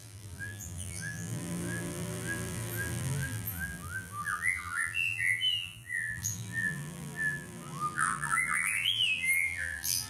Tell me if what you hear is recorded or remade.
remade